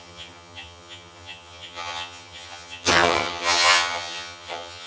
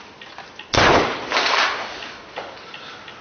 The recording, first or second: second